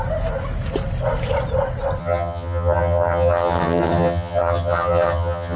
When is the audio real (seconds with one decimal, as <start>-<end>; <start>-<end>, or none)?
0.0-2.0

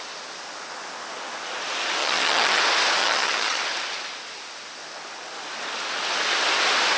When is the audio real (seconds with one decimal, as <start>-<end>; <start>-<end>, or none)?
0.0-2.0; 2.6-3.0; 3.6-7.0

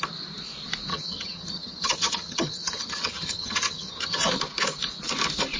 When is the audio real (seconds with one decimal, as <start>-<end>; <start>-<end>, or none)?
0.0-0.9; 4.3-5.6

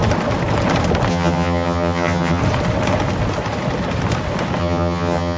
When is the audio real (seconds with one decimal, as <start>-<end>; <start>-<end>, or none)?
0.0-1.1; 2.4-4.6

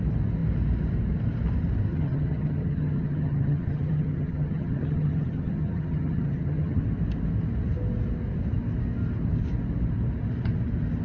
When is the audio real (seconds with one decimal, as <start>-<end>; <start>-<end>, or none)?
0.0-1.9; 6.8-11.0

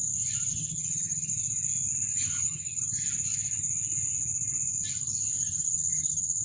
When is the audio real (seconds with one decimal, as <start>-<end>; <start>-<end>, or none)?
0.0-0.5; 1.3-2.1; 2.8-5.4